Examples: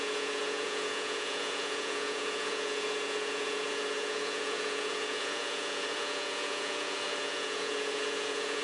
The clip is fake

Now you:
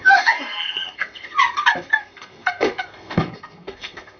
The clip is fake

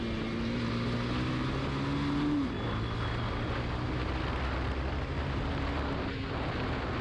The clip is real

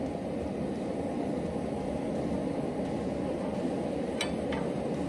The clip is real